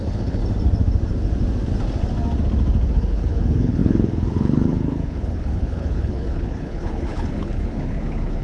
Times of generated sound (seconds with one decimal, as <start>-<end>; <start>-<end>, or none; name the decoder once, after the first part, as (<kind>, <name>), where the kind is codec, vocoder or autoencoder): 0.0-0.4 (codec, HILCodec); 2.9-8.4